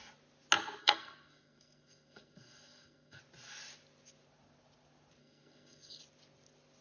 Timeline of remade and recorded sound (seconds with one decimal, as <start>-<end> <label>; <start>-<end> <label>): 0.0-0.8 recorded; 0.8-3.2 remade; 3.2-5.2 recorded; 5.2-6.0 remade; 6.0-6.8 recorded